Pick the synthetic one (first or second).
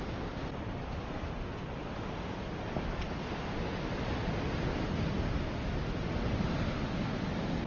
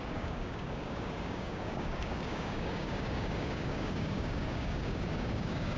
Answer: second